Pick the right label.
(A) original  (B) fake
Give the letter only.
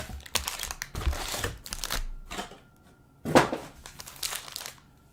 A